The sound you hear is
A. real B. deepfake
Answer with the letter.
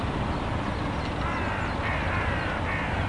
A